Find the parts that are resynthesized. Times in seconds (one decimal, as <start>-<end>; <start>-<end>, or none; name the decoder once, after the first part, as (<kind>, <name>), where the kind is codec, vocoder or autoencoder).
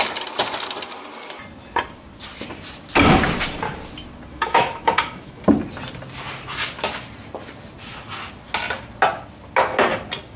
4.3-5.4 (autoencoder, DAC-VAE)